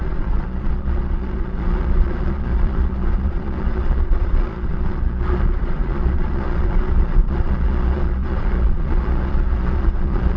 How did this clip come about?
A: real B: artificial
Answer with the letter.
B